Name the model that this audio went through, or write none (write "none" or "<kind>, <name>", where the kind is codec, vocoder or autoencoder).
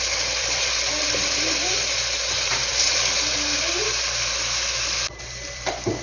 vocoder, BigVGAN v2